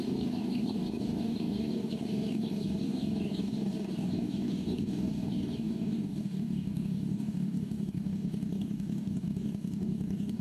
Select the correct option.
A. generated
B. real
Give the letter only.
A